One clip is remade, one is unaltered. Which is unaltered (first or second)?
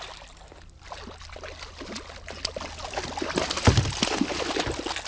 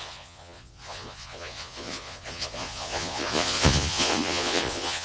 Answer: first